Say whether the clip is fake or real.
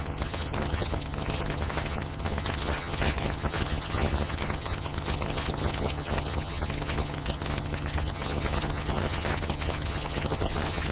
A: fake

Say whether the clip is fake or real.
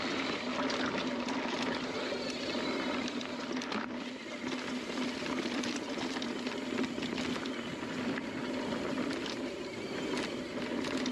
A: real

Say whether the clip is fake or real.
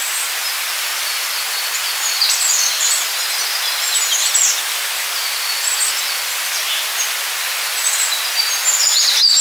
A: real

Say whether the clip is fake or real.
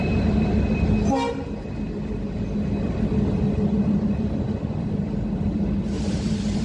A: real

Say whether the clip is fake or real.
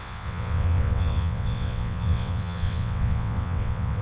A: fake